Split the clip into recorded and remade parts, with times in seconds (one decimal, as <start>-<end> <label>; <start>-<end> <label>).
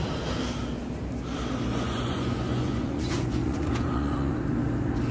0.0-1.7 recorded; 1.7-4.3 remade; 4.3-5.1 recorded